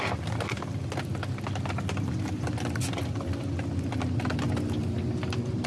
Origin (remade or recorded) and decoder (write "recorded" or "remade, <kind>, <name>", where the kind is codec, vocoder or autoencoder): recorded